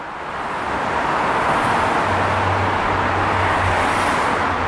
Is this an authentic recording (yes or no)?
yes